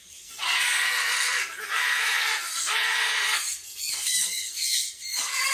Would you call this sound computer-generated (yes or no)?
yes